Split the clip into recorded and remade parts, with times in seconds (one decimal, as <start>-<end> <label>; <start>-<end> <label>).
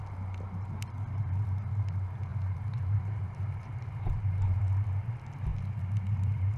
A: 0.0-2.3 recorded; 2.3-4.6 remade; 4.6-6.6 recorded